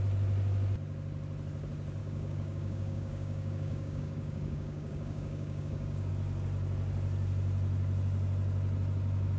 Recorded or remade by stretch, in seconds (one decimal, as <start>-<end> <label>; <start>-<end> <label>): 0.0-2.0 recorded; 2.0-6.1 remade; 6.1-9.4 recorded